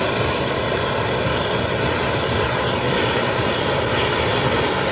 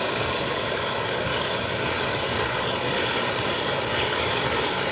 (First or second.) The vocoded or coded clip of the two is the second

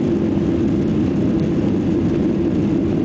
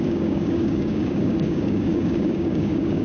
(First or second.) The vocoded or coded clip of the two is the second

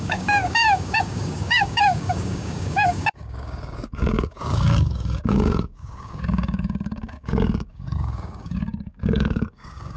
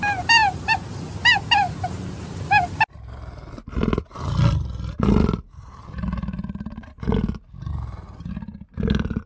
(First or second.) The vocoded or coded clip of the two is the first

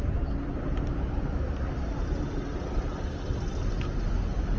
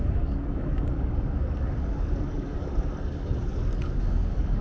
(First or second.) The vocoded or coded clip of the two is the second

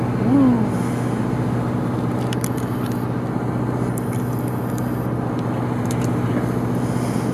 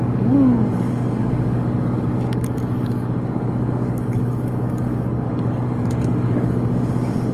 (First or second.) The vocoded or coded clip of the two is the second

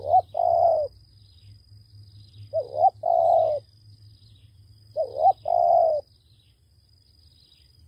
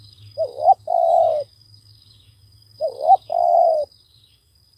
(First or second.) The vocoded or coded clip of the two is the second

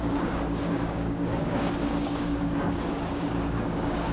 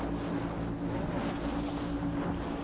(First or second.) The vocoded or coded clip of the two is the first